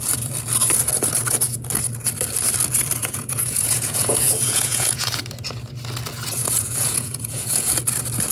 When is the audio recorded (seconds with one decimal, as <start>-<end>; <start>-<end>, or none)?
0.0-3.0; 5.1-6.4; 7.8-8.3